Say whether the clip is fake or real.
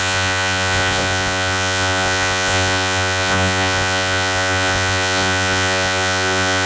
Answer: fake